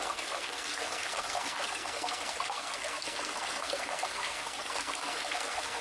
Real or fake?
fake